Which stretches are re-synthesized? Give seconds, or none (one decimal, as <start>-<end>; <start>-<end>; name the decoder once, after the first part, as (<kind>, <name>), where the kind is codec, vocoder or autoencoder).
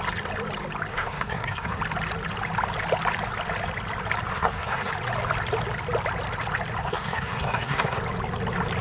0.9-1.8 (codec, SNAC); 4.3-4.9; 6.8-8.0